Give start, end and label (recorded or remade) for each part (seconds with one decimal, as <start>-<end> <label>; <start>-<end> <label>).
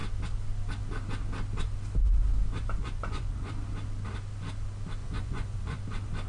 0.0-2.8 recorded; 2.8-3.5 remade; 3.5-5.0 recorded; 5.0-5.8 remade; 5.8-6.3 recorded